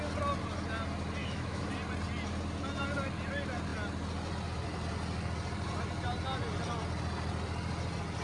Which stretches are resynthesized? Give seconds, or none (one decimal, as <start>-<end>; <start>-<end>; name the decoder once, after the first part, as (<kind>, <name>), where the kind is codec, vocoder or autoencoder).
1.2-1.7 (autoencoder, DAC-VAE)

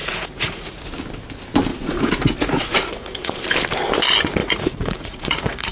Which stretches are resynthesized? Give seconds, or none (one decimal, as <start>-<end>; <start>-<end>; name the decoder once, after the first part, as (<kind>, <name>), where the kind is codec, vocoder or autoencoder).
0.0-0.8 (vocoder, Vocos); 1.7-3.3; 4.4-5.7